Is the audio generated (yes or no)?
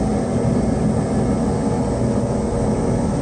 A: no